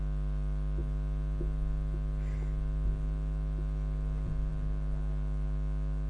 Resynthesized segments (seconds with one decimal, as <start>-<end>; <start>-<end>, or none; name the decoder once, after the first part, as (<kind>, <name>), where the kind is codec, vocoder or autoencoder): none